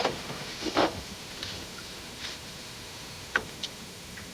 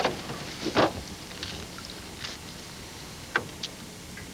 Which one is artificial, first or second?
first